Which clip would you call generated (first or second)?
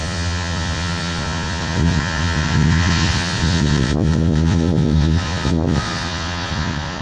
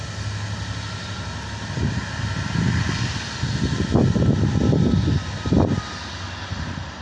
first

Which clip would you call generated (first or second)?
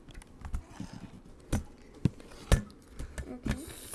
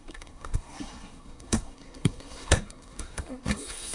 second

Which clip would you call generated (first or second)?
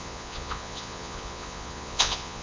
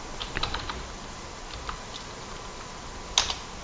first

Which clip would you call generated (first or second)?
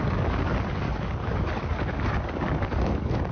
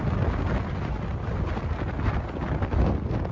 first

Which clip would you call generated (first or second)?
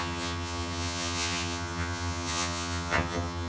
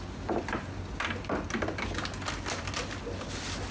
first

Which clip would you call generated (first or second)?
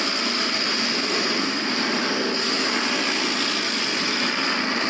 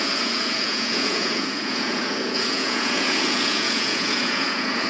second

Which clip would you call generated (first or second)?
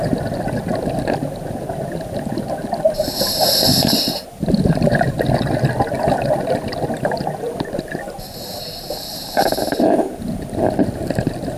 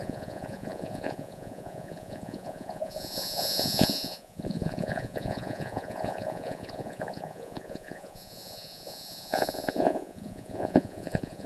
second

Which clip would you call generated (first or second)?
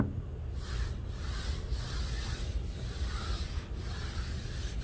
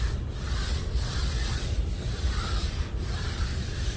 second